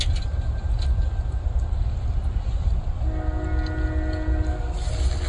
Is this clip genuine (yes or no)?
yes